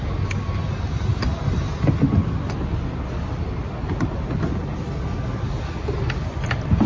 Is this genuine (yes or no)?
yes